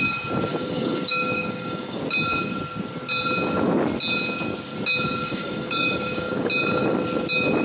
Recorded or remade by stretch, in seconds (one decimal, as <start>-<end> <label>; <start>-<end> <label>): 0.0-0.5 recorded; 0.5-2.0 remade; 2.0-5.2 recorded; 5.2-6.5 remade; 6.5-7.6 recorded